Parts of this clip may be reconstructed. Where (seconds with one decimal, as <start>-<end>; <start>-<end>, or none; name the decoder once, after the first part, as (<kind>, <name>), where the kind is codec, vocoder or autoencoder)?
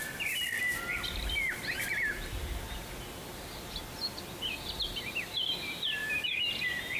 6.0-6.5 (autoencoder, DAC-VAE)